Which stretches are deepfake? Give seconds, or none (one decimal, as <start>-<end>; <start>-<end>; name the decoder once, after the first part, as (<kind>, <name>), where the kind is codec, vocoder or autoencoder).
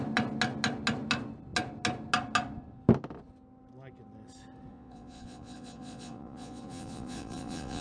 4.7-7.8 (vocoder, Vocos)